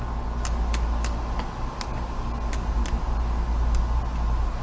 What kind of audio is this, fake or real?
real